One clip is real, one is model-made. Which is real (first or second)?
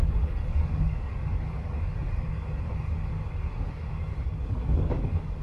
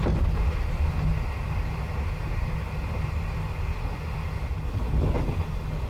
second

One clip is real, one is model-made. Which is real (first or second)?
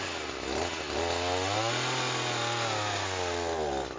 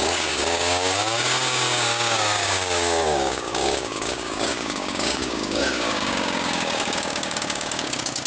first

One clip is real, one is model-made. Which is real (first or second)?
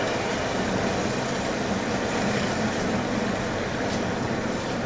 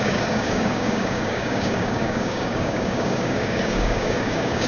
first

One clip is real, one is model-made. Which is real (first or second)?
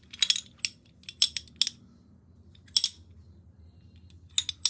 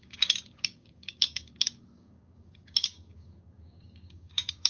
first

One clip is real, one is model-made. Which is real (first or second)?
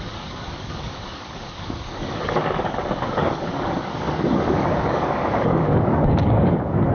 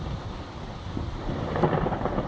second